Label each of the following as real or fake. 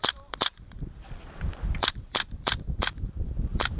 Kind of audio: fake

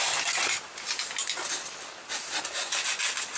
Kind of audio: real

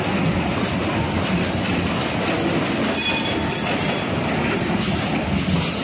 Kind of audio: real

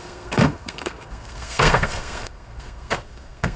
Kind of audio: fake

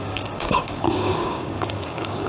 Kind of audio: fake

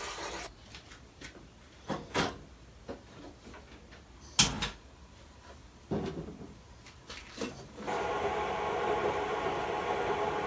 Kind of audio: real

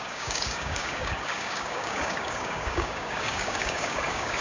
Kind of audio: fake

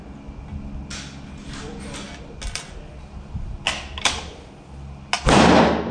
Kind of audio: real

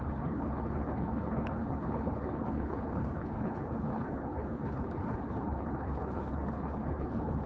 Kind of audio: fake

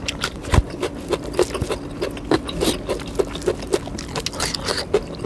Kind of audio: real